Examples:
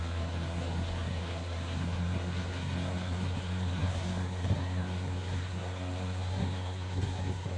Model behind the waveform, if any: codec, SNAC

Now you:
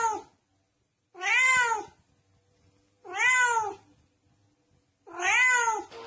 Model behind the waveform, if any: none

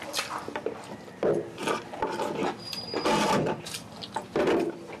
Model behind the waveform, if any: none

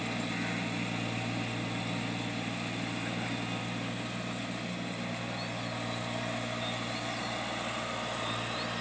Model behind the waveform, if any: none